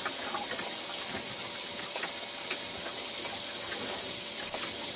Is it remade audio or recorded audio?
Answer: recorded